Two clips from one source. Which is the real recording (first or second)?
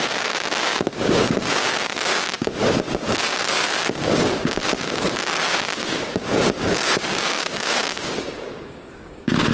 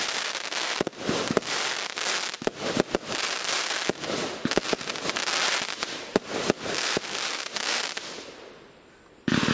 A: second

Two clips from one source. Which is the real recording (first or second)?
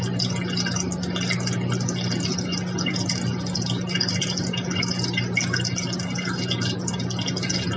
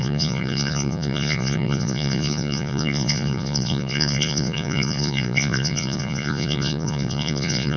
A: first